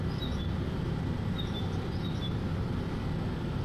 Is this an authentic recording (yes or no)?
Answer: yes